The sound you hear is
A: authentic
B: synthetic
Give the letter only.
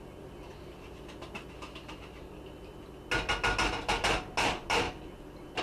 A